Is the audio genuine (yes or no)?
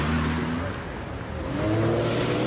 yes